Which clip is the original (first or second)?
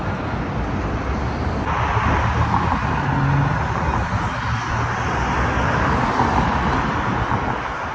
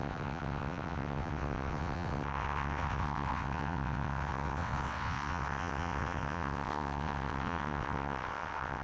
first